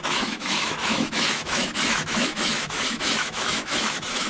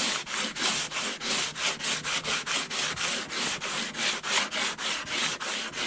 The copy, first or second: first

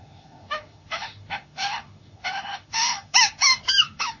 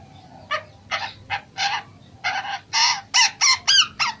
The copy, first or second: first